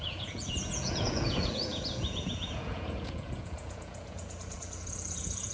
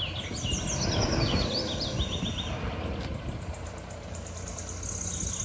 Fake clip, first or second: first